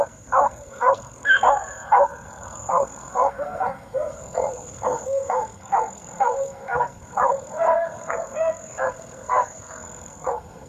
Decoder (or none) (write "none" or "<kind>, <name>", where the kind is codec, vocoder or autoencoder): codec, SNAC